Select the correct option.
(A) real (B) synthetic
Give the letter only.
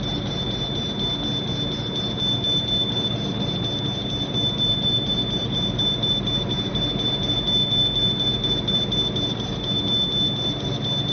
A